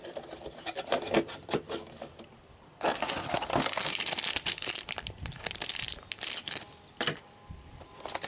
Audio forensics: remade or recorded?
remade